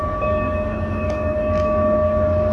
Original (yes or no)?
no